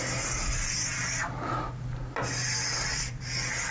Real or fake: real